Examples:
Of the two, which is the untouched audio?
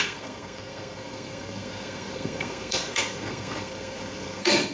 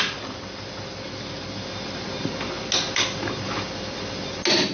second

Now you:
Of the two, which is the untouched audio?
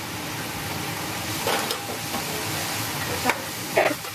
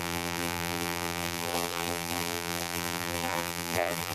first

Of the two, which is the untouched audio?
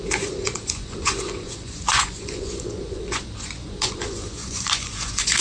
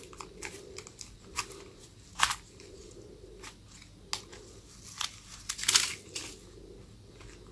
second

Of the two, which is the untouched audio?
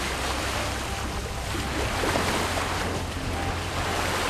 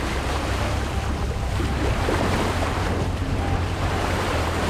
first